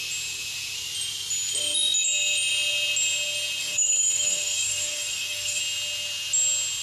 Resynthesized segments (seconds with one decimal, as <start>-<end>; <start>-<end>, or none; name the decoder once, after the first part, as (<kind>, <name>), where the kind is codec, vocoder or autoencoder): 3.6-5.6 (codec, DAC)